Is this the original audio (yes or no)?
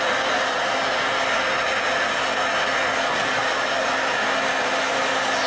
yes